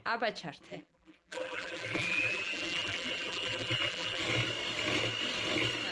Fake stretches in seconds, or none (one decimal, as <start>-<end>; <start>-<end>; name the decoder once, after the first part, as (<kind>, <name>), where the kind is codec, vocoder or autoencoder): 0.7-4.2 (vocoder, BigVGAN v2)